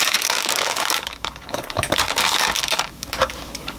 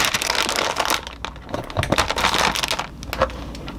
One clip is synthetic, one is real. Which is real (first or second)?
second